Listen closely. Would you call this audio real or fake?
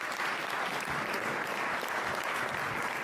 real